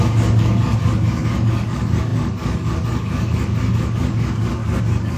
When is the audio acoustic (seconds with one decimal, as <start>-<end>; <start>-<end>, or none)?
none